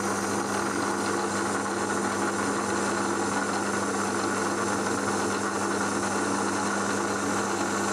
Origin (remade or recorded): recorded